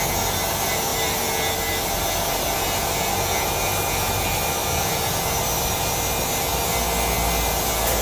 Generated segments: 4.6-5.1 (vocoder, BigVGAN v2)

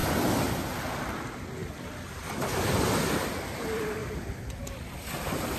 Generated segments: 0.0-0.6 (vocoder, BigVGAN v2); 4.0-4.6